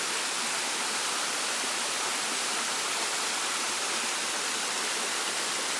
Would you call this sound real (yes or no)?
no